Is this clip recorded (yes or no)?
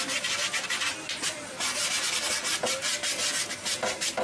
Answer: yes